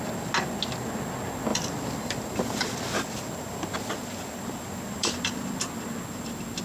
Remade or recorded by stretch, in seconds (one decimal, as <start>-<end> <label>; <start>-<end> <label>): 0.0-1.5 recorded; 1.5-5.5 remade; 5.5-6.6 recorded